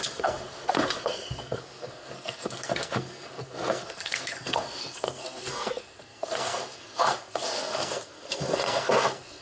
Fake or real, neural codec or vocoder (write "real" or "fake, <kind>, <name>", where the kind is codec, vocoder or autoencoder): fake, codec, SNAC